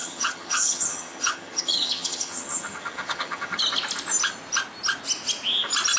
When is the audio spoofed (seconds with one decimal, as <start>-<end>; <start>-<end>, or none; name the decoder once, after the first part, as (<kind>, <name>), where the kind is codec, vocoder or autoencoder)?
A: 0.0-3.6 (vocoder, HiFi-GAN)